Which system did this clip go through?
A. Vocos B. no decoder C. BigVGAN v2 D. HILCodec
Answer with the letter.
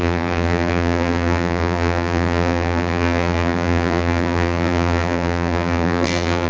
C